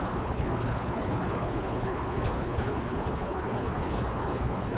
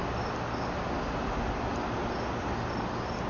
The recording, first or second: second